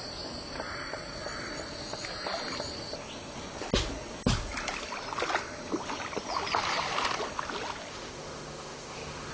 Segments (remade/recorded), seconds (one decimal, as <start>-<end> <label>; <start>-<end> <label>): 0.0-7.9 recorded; 7.9-9.3 remade